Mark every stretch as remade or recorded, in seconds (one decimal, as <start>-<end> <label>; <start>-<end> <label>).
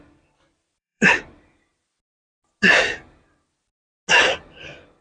0.0-1.7 remade; 1.7-5.0 recorded